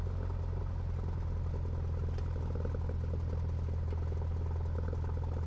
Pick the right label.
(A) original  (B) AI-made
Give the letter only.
A